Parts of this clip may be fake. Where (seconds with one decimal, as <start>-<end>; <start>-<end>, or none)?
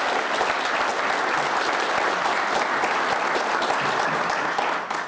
none